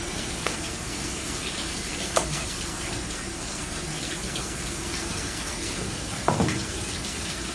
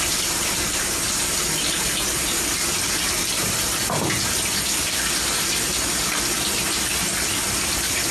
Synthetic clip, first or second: first